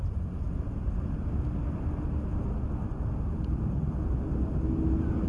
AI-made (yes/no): no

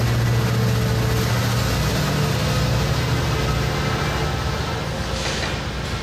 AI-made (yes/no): no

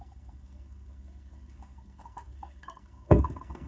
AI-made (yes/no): yes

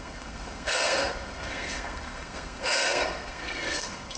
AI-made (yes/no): yes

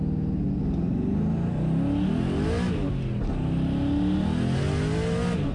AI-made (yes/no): no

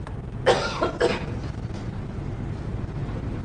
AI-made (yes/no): no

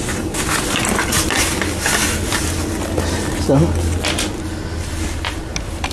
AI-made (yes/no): no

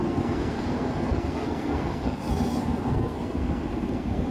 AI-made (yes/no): yes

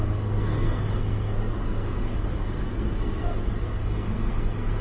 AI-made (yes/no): yes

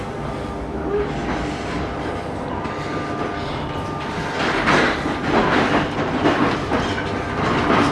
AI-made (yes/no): no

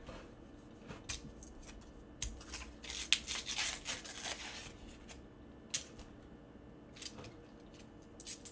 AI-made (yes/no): no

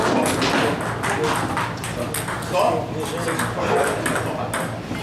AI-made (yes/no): no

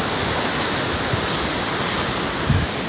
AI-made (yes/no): no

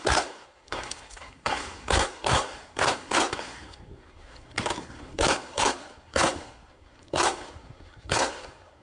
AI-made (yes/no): yes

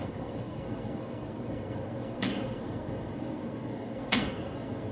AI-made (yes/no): yes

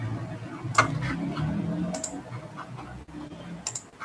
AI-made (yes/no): no